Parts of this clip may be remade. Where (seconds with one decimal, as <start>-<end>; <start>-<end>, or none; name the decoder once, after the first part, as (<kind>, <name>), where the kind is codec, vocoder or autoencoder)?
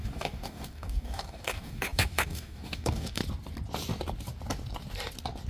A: 0.0-3.2 (codec, DAC)